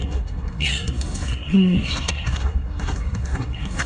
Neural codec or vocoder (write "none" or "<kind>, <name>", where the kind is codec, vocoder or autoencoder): codec, SNAC